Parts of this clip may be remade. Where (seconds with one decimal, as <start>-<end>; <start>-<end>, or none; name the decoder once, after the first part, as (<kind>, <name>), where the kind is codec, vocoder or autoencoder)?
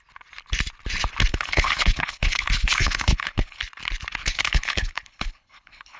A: 1.3-3.6 (codec, HILCodec); 4.2-6.0